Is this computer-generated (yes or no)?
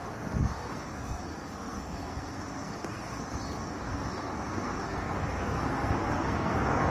yes